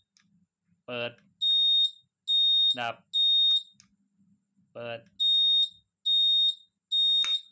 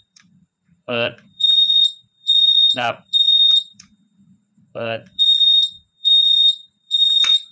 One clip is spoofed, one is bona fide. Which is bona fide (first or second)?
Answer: first